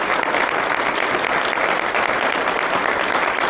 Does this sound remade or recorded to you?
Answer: recorded